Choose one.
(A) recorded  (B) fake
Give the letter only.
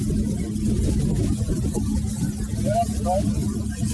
A